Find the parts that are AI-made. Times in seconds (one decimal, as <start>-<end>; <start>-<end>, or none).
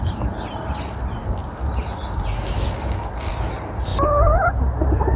none